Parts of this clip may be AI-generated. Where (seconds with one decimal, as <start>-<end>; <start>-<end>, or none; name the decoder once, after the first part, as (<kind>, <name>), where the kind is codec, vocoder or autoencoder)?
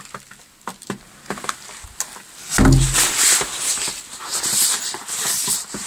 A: 0.7-1.5 (vocoder, BigVGAN v2)